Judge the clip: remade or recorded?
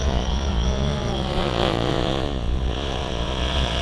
remade